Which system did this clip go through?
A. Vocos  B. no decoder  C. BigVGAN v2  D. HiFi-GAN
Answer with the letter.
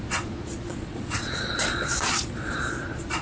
A